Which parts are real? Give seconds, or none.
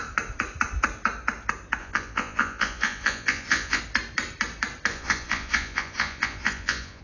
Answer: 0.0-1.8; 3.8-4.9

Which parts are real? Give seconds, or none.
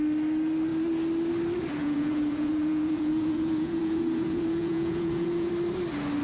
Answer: 0.0-1.8; 5.5-6.2